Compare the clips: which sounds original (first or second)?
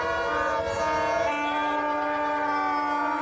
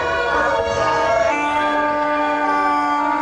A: first